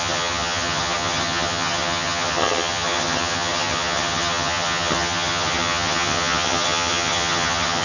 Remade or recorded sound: remade